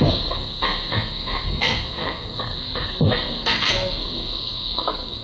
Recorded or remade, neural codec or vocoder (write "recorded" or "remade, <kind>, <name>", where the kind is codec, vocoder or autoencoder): remade, codec, SNAC